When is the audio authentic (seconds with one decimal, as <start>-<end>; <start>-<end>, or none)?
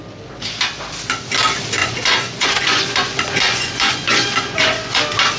0.0-1.8; 5.0-5.4